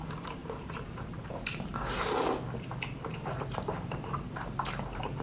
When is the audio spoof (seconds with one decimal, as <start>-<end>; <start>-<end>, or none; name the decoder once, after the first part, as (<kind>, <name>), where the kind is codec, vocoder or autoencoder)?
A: 0.0-1.7 (vocoder, BigVGAN v2); 3.1-5.2